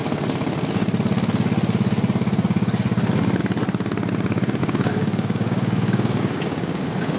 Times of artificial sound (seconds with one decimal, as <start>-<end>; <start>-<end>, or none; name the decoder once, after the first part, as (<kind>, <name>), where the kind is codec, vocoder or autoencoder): 4.6-7.2 (codec, DAC)